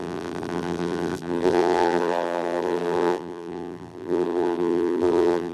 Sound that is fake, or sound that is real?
fake